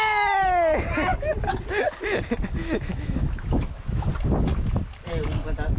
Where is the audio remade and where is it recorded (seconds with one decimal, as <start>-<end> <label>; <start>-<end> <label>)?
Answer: 0.0-2.6 recorded; 2.6-4.1 remade; 4.1-5.8 recorded